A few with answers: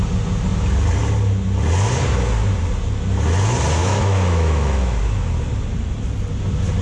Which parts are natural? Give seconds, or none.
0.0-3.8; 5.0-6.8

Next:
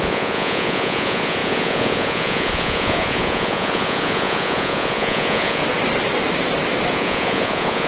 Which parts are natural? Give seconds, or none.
5.6-6.9

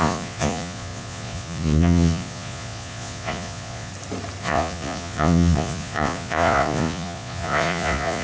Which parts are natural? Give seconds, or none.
3.9-4.4

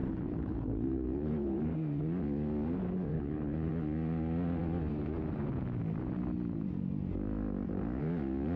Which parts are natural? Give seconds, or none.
1.7-3.1; 3.7-8.6

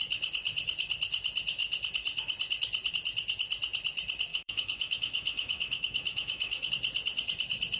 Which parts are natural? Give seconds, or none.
0.0-4.3; 6.7-7.8

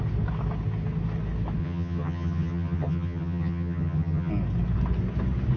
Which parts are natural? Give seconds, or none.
0.0-1.6; 4.3-5.6

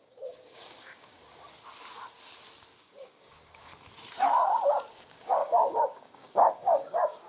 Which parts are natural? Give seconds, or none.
1.2-2.8; 3.7-4.9

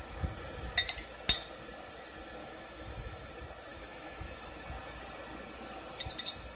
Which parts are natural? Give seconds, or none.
0.0-2.4; 3.3-3.7; 4.5-6.6